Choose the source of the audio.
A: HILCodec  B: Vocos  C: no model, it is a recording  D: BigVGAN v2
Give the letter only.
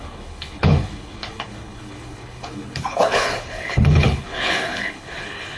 A